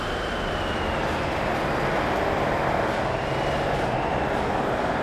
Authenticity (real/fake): real